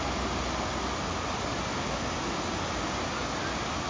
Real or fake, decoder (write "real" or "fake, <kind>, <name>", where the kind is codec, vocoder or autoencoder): real